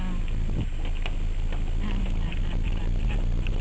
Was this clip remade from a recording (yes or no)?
no